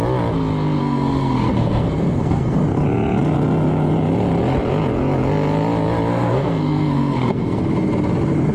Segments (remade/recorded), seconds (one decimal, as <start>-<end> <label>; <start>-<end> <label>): 0.0-0.8 recorded; 0.8-2.6 remade; 2.6-6.1 recorded; 6.1-7.6 remade; 7.6-8.5 recorded